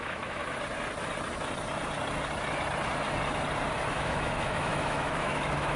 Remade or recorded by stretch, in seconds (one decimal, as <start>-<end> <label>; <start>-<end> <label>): 0.0-0.4 remade; 0.4-3.9 recorded; 3.9-5.8 remade